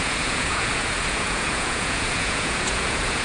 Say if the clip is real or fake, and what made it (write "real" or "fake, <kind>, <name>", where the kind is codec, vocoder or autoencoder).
fake, vocoder, Vocos